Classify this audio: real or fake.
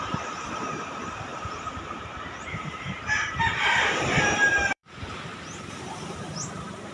fake